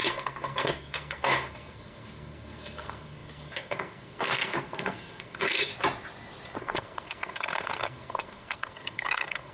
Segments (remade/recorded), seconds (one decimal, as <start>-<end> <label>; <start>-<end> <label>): 0.0-5.7 remade; 5.7-6.6 recorded; 6.6-9.5 remade